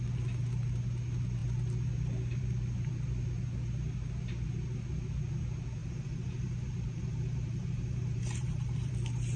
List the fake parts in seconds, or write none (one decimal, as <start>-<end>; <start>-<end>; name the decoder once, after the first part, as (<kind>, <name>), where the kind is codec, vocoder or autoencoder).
5.8-8.9 (vocoder, BigVGAN v2)